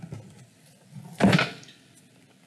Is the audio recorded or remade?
recorded